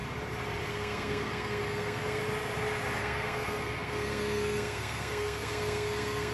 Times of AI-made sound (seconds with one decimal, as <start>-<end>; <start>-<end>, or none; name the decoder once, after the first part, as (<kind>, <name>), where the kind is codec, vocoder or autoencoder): 0.7-2.2 (codec, SNAC); 3.0-6.3